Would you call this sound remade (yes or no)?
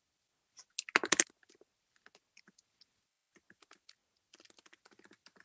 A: no